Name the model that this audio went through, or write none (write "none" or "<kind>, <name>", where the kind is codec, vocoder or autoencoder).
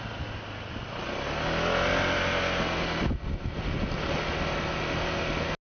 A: none